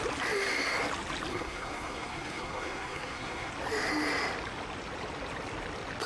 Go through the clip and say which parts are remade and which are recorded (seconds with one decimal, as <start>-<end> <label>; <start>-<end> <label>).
0.0-1.3 recorded; 1.3-3.5 remade; 3.5-6.1 recorded